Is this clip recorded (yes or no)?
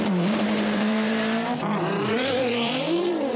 no